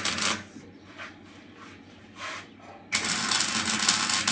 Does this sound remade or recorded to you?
recorded